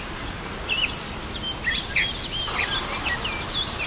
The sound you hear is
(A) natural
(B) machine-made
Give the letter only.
A